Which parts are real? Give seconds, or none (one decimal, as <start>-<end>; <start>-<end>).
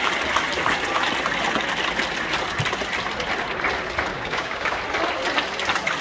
0.0-4.1; 4.8-6.0